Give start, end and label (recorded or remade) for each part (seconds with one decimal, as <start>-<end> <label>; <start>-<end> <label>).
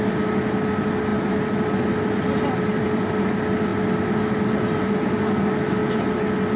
0.0-6.6 recorded